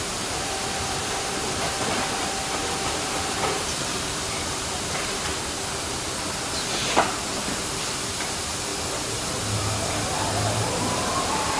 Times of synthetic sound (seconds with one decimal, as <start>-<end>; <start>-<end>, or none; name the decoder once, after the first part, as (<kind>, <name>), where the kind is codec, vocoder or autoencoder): 0.0-5.3 (vocoder, BigVGAN v2); 7.8-8.7; 10.8-11.6